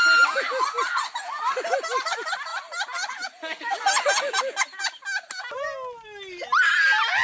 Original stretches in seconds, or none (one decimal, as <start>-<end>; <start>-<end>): 0.0-7.2

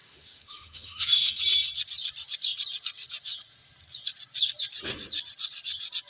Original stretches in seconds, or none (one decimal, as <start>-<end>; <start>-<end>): 1.4-6.1

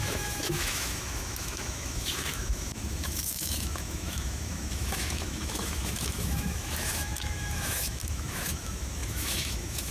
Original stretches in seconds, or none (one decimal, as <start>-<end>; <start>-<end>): none

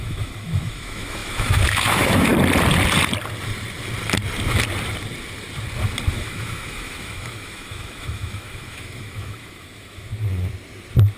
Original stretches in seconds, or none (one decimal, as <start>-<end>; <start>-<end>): 2.3-6.1; 10.1-11.2

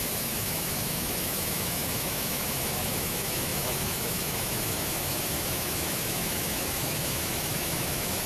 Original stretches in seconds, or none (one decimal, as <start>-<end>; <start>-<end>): none

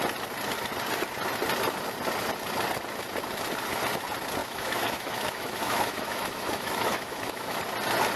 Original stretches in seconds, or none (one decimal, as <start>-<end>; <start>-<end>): 0.0-4.4; 7.6-8.2